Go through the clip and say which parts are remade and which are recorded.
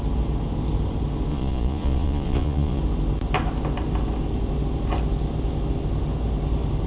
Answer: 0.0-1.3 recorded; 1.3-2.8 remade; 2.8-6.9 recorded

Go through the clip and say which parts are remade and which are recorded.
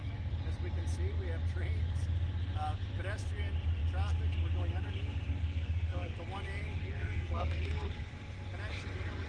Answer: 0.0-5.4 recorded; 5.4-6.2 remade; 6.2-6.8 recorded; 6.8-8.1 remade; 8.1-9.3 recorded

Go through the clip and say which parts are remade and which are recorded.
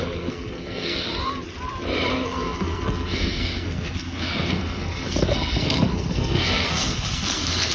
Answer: 0.0-1.1 remade; 1.1-2.1 recorded; 2.1-7.7 remade